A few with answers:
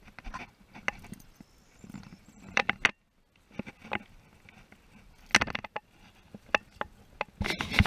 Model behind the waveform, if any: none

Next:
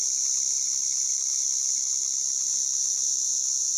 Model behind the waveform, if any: none